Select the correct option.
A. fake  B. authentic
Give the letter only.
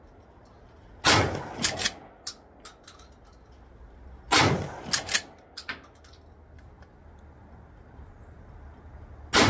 B